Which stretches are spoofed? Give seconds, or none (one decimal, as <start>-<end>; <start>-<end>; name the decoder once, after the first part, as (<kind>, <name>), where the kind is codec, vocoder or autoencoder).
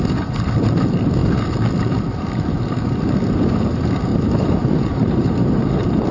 4.1-5.6 (vocoder, BigVGAN v2)